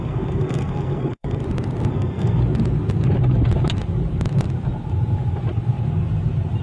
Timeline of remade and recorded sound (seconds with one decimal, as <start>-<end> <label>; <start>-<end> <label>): 0.0-1.4 remade; 1.4-1.9 recorded; 1.9-2.4 remade; 2.4-6.6 recorded